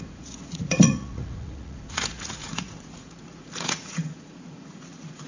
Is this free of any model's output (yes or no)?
no